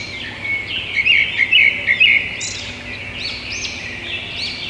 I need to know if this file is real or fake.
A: real